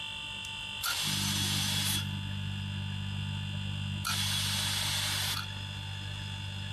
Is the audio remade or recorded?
recorded